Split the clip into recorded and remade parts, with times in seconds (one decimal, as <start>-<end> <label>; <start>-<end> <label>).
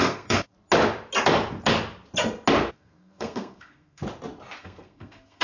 0.0-0.5 remade; 0.5-2.7 recorded; 2.7-4.0 remade; 4.0-4.6 recorded; 4.6-5.4 remade